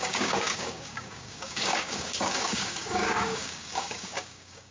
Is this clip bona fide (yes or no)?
no